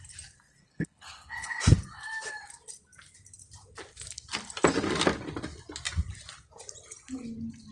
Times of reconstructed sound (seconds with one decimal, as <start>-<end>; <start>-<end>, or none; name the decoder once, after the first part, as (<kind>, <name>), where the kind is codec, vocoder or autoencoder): 0.6-1.6 (codec, HILCodec)